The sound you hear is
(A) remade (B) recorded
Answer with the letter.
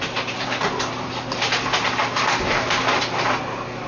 B